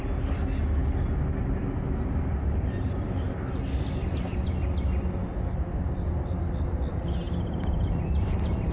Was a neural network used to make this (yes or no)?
no